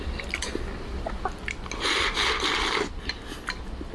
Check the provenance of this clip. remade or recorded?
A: recorded